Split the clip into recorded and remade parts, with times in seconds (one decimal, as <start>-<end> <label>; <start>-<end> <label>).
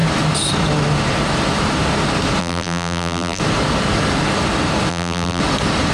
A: 0.0-2.4 recorded; 2.4-3.4 remade; 3.4-4.9 recorded; 4.9-5.4 remade; 5.4-5.9 recorded